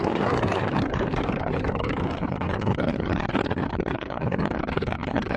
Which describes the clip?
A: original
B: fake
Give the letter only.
B